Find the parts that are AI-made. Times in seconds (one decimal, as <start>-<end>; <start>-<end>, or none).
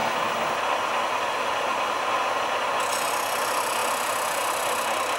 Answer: none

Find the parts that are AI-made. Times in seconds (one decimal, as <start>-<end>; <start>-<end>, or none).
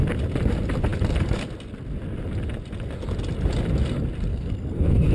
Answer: 4.3-5.1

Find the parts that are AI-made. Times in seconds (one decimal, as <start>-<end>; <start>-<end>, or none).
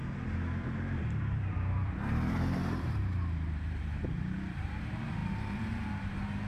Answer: 0.0-6.5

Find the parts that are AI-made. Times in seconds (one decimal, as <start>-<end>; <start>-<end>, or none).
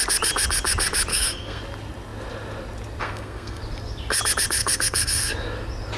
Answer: 1.1-1.6; 3.0-3.6; 4.6-5.3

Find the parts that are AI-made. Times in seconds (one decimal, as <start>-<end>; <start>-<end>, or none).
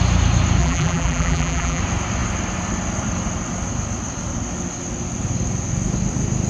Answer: 0.6-1.8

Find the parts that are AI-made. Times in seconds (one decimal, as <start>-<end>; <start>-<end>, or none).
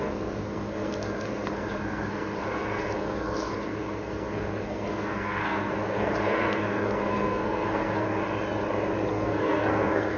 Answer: 0.0-8.2; 9.1-10.2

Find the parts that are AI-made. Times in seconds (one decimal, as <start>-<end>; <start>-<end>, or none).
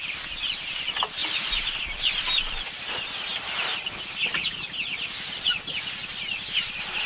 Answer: 1.2-1.9; 3.3-3.9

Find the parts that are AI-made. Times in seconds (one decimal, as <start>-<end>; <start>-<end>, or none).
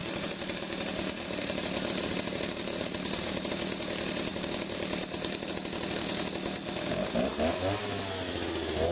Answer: 0.0-3.5; 4.3-5.5